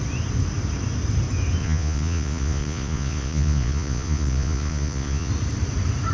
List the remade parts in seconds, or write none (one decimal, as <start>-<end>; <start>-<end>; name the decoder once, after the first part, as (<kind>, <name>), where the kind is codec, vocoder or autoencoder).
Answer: 1.6-5.3 (vocoder, Vocos)